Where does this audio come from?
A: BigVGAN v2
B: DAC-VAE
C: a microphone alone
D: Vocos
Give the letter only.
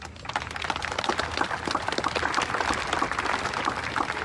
C